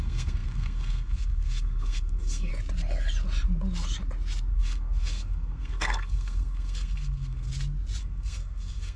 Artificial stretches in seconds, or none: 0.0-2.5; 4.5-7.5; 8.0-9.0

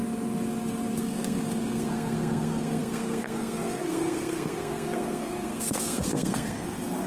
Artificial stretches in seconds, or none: 1.0-7.1

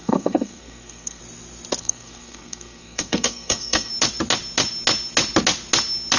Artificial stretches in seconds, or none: 0.0-1.2; 1.8-3.9

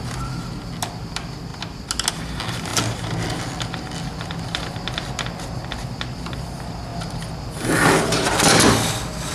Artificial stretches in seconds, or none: none

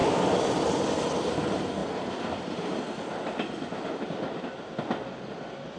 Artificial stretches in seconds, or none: none

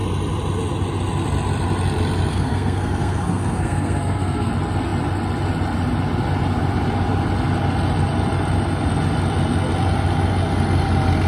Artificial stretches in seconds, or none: 2.3-4.5

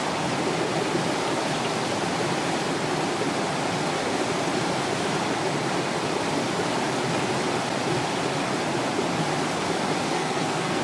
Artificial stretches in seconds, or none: 10.1-10.8